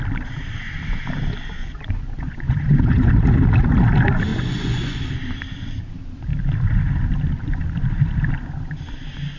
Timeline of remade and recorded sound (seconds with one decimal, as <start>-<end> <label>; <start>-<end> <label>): 0.0-1.6 recorded; 1.6-3.1 remade; 3.1-4.3 recorded; 4.3-5.0 remade; 5.0-9.4 recorded